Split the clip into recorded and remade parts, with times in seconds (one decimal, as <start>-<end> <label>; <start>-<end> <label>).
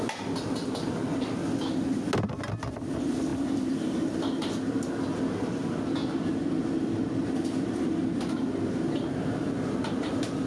0.0-10.5 recorded